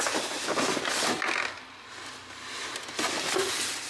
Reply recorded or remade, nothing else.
recorded